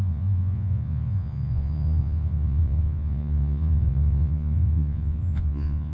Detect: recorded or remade remade